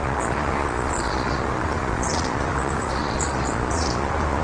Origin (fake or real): fake